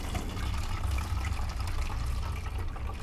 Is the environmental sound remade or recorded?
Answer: recorded